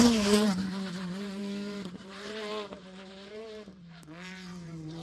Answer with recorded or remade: remade